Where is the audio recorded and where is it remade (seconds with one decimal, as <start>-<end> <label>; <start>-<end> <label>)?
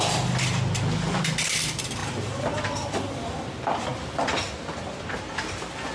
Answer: 0.0-5.9 recorded